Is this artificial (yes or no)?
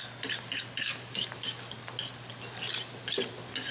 no